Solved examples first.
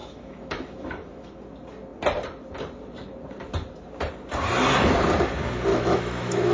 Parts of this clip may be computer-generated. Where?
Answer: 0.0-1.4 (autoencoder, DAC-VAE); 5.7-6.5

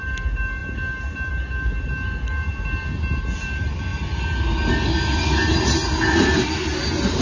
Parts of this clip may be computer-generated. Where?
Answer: none